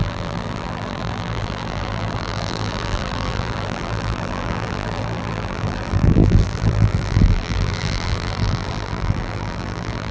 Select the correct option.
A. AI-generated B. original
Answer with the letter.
A